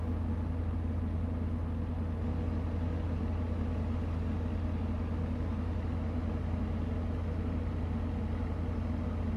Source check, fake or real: real